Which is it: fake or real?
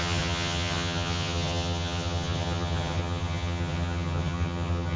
fake